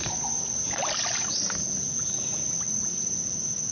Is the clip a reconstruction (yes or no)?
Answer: no